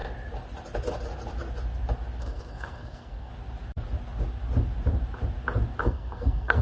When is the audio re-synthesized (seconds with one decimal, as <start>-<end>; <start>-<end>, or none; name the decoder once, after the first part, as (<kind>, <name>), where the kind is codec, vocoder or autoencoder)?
2.2-3.3 (codec, SNAC); 5.8-6.6